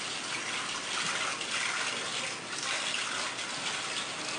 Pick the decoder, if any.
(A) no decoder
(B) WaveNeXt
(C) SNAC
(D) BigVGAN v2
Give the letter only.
A